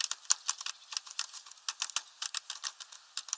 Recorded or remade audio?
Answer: recorded